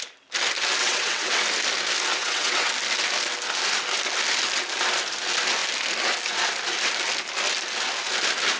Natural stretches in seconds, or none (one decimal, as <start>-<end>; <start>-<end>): 0.0-0.8; 1.4-2.2; 2.7-8.6